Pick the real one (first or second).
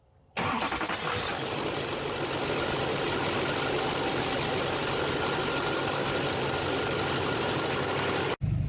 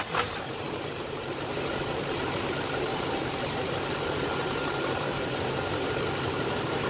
first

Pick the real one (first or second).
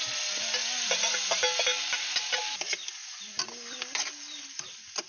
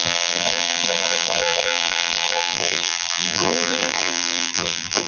first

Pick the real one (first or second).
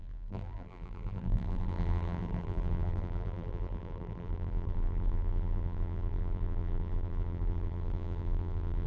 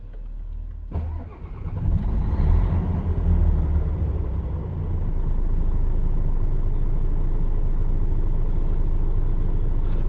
second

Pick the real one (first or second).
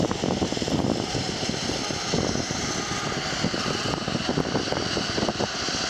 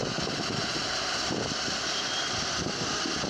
first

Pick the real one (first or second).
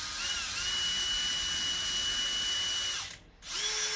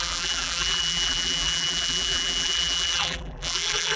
first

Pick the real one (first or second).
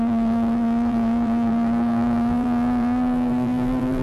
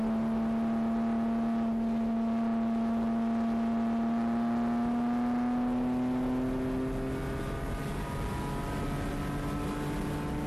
second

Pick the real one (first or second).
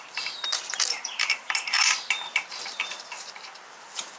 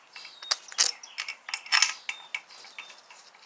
second